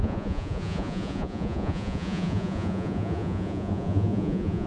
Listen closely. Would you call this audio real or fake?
fake